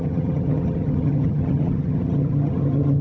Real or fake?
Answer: fake